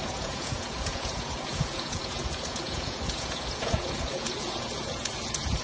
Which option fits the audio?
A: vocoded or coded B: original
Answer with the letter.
A